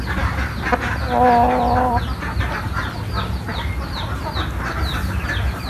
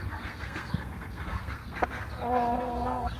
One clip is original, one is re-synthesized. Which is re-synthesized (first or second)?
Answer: second